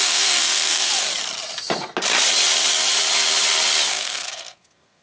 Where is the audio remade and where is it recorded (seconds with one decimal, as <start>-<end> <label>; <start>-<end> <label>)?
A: 0.0-0.9 remade; 0.9-3.9 recorded; 3.9-5.0 remade